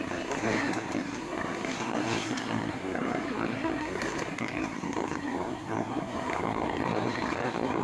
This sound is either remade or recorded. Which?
remade